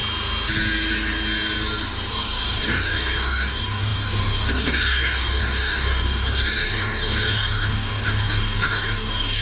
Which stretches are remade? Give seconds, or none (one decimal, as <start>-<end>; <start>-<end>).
2.1-9.4